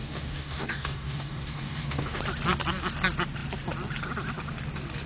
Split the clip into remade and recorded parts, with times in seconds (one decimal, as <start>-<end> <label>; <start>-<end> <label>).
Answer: 0.0-2.2 remade; 2.2-5.1 recorded